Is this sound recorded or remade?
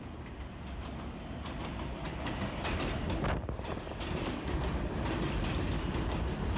recorded